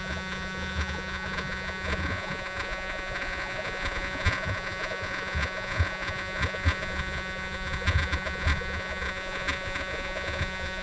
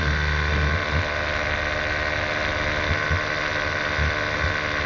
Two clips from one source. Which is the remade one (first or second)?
first